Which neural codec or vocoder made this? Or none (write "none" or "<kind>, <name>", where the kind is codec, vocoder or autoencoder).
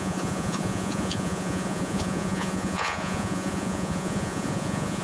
vocoder, Vocos